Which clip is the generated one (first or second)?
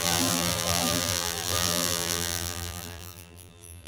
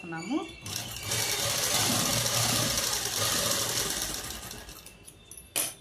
first